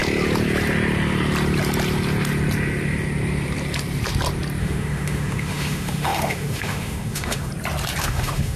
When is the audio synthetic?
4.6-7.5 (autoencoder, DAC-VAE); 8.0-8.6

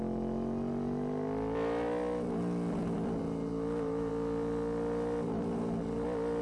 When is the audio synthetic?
3.5-4.1 (autoencoder, DAC-VAE)

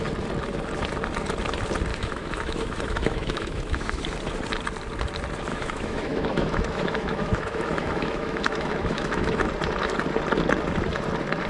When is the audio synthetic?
1.9-4.0 (autoencoder, DAC-VAE); 5.5-9.5